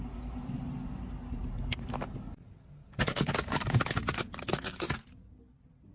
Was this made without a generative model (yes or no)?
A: yes